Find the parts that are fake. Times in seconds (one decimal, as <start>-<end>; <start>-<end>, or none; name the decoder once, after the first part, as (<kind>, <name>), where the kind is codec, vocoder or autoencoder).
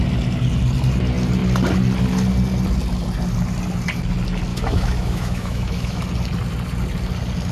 4.5-6.0 (autoencoder, DAC-VAE)